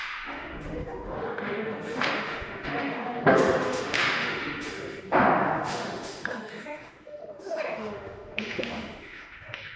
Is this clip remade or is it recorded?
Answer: remade